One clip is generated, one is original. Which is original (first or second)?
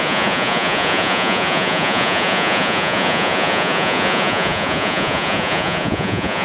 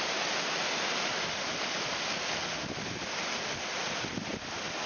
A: second